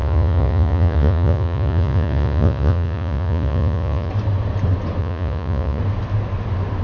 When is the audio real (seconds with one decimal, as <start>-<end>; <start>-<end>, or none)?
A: 4.1-5.0; 5.8-6.8